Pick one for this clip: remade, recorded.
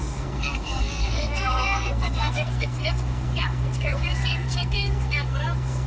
remade